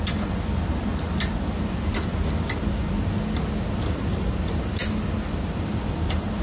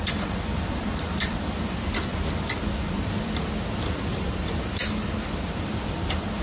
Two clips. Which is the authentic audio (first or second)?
first